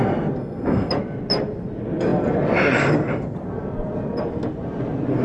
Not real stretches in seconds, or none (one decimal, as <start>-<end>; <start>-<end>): 0.4-0.9

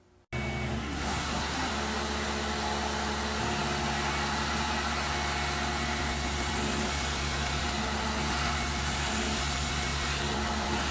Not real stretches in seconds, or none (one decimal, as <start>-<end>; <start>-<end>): 0.8-1.7